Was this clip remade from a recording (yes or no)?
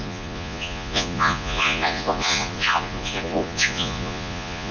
yes